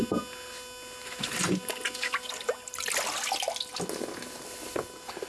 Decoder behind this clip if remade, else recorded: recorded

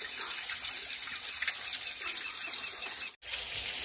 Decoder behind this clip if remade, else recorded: recorded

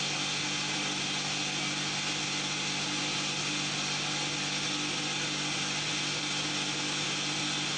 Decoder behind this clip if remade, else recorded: recorded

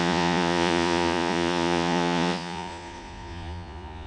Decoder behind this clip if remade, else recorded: remade, vocoder, Vocos